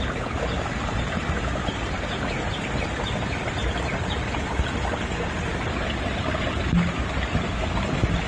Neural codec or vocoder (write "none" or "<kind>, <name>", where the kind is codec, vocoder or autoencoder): none